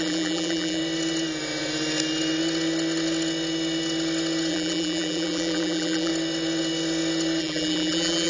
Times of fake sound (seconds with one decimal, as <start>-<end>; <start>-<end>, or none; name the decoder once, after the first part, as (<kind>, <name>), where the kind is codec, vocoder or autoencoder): 0.0-0.8 (vocoder, BigVGAN v2); 4.5-6.1; 7.4-8.3